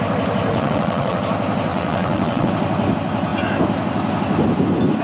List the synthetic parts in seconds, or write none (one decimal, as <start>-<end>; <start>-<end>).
0.5-1.2; 1.7-2.5